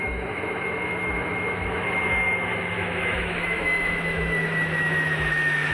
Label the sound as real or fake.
fake